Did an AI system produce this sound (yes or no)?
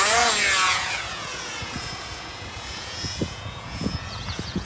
yes